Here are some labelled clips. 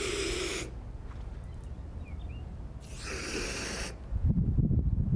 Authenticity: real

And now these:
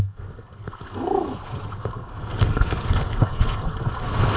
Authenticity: fake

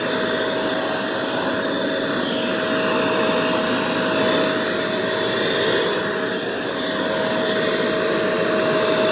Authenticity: real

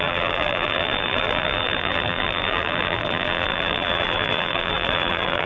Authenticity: fake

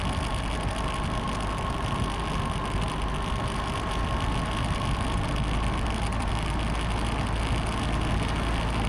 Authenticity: real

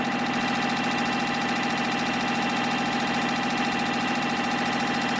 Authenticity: real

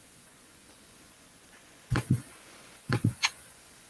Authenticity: fake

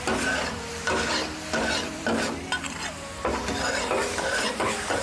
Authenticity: real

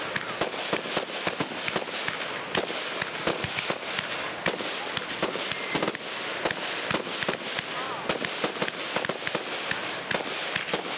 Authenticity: real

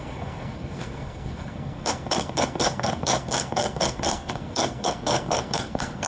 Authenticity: fake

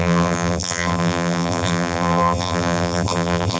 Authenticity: fake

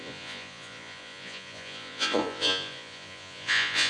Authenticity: fake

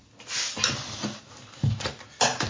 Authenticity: real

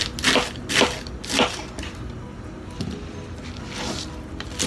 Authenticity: real